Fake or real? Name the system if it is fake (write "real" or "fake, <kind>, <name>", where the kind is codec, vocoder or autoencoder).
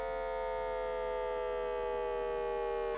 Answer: real